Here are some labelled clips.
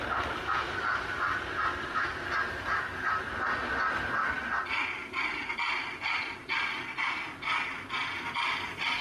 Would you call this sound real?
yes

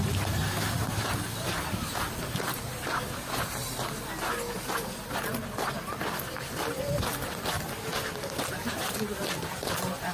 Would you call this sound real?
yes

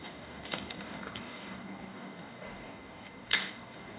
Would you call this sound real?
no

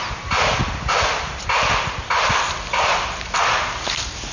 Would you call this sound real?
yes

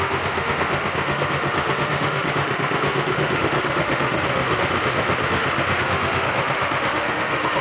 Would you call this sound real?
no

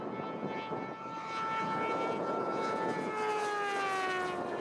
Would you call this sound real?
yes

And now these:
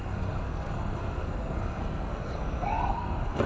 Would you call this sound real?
no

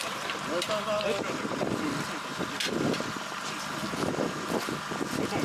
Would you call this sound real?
yes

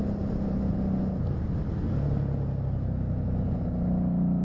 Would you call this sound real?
yes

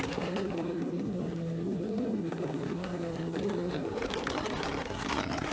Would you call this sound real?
no